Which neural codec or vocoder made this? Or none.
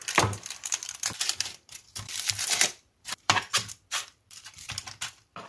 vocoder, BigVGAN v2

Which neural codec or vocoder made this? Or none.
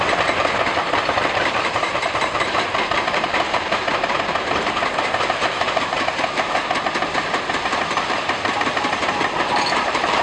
vocoder, BigVGAN v2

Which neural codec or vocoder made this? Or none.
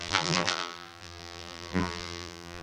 vocoder, BigVGAN v2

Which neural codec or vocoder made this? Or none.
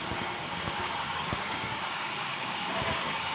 codec, DAC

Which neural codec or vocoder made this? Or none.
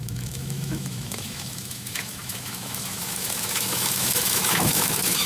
autoencoder, DAC-VAE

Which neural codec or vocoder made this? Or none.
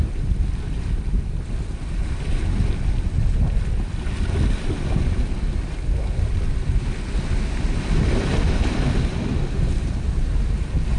none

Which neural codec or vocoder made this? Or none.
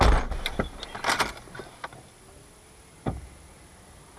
none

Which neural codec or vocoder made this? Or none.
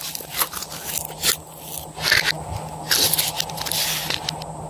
none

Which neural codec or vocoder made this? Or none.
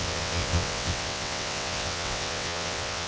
vocoder, WaveNeXt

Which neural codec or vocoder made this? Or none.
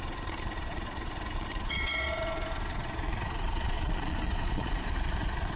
vocoder, Vocos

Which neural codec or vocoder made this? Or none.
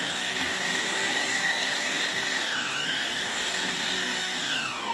codec, DAC